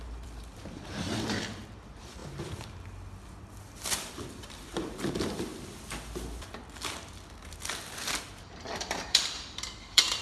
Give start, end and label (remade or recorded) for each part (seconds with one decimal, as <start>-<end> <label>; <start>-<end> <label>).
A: 0.0-5.5 remade; 5.5-8.2 recorded; 8.2-10.2 remade